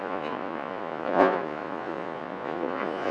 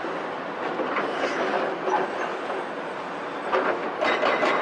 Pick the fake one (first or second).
first